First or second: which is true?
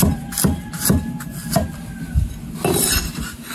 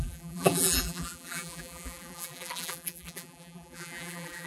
first